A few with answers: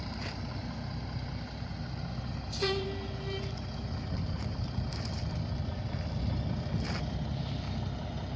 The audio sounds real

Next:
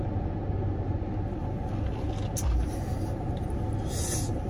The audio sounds real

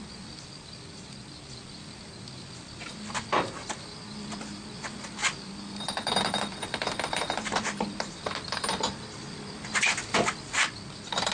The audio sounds real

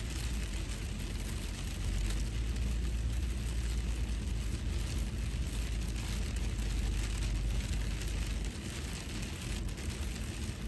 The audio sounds real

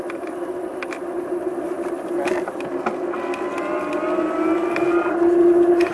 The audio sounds real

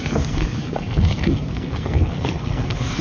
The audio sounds fake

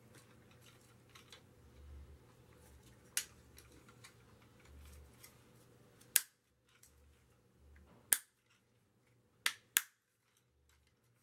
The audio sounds real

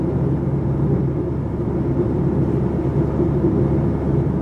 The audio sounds real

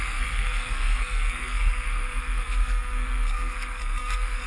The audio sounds fake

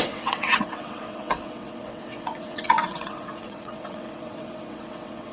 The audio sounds fake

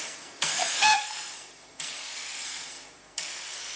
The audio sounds fake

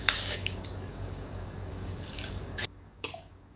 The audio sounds fake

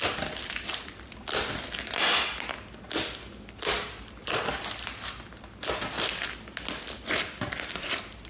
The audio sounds real